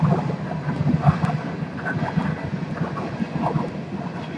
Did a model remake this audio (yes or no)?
no